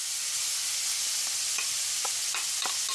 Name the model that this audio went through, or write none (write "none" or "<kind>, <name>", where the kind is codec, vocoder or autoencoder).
none